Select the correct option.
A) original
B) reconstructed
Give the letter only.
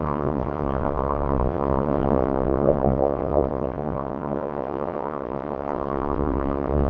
B